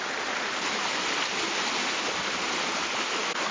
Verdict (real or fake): real